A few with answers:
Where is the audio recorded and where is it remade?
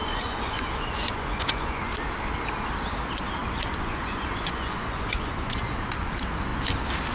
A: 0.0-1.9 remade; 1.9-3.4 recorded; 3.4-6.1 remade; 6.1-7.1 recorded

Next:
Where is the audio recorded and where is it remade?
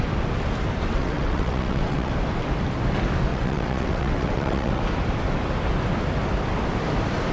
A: 0.0-0.9 recorded; 0.9-2.1 remade; 2.1-3.3 recorded; 3.3-4.8 remade; 4.8-7.3 recorded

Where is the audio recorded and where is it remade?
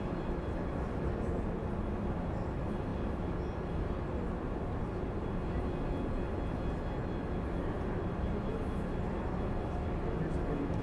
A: 0.0-10.8 recorded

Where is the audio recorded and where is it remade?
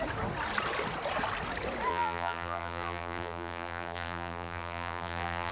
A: 0.0-1.9 recorded; 1.9-5.5 remade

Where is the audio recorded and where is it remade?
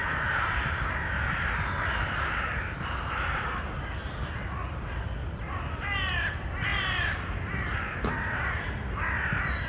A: 0.0-3.5 remade; 3.5-6.7 recorded; 6.7-8.1 remade; 8.1-9.7 recorded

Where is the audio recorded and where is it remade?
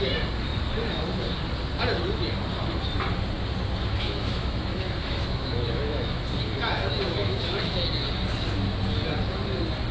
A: 0.0-3.9 recorded; 3.9-6.2 remade; 6.2-7.2 recorded; 7.2-7.7 remade; 7.7-9.9 recorded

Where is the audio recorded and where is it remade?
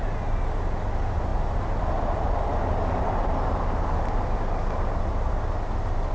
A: 0.0-6.1 recorded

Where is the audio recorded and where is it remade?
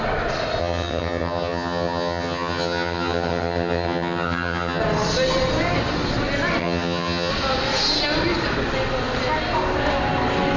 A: 0.0-0.6 recorded; 0.6-4.8 remade; 4.8-6.6 recorded; 6.6-7.3 remade; 7.3-10.6 recorded